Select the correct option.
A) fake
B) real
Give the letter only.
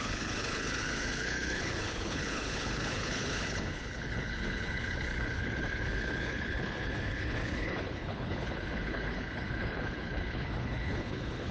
A